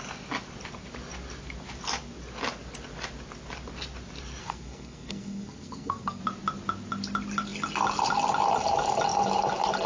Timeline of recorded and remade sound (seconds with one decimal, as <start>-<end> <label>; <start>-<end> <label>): 0.0-4.4 recorded; 4.4-6.2 remade; 6.2-9.9 recorded